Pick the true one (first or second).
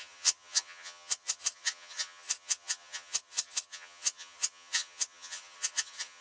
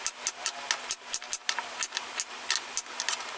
second